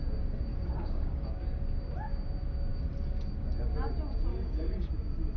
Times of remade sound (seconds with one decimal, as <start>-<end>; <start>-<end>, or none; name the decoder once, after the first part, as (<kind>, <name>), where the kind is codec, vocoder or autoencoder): 0.5-1.4 (codec, DAC); 4.3-4.9